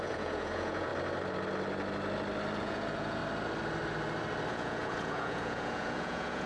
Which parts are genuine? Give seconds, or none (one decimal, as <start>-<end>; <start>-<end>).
0.9-2.6; 3.2-4.5